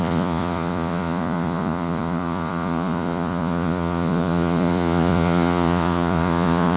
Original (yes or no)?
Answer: no